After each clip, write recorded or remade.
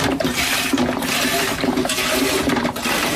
remade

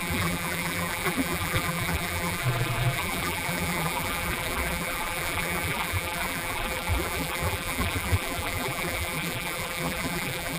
remade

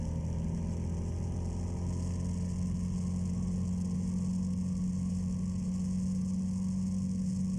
recorded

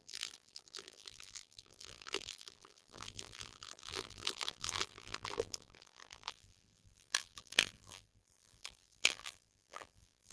remade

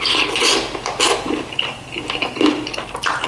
remade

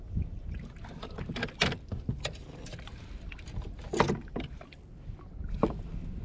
recorded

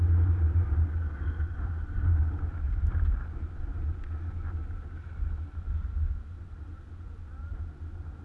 recorded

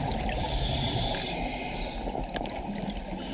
recorded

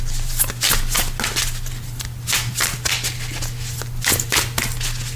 recorded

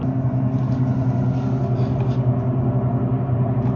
recorded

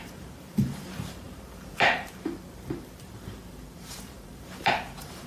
remade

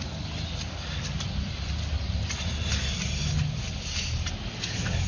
recorded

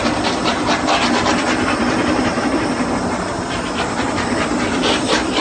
remade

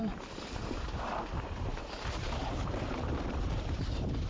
remade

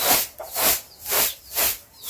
recorded